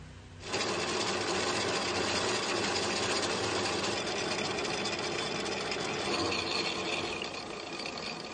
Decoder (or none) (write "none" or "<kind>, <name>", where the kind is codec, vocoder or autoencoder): none